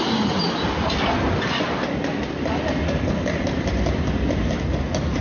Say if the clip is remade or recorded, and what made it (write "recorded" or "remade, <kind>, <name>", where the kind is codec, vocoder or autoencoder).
recorded